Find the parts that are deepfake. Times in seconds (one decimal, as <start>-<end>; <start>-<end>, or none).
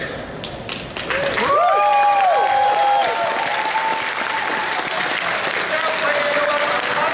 none